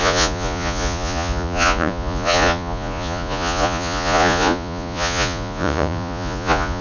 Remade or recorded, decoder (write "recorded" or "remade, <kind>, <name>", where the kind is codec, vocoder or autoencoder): remade, vocoder, Vocos